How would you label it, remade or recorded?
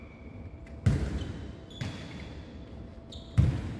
recorded